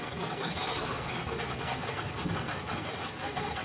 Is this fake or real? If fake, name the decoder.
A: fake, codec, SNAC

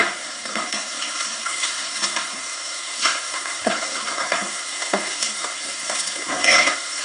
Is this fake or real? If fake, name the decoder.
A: fake, codec, SNAC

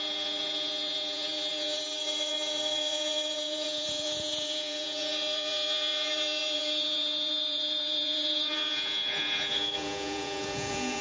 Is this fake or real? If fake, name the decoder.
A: fake, vocoder, Vocos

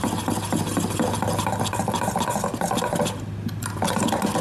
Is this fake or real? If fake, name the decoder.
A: real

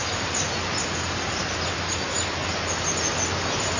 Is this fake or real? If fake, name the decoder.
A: real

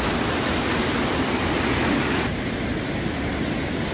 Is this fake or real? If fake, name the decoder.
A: real